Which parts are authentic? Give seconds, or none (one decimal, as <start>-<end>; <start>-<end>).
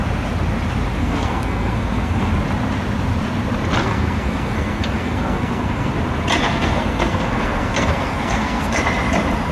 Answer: 0.0-1.0; 2.3-3.8; 5.9-6.4; 8.8-9.5